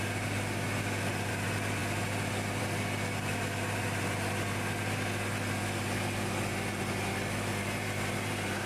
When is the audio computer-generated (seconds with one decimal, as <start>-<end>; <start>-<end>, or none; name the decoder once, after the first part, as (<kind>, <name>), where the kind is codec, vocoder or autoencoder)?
none